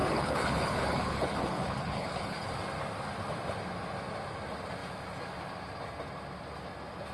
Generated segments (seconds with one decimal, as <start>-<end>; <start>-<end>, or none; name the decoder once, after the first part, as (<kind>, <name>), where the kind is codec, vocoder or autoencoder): 0.0-2.5 (codec, HILCodec)